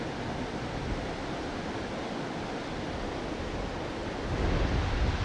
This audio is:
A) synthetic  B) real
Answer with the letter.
B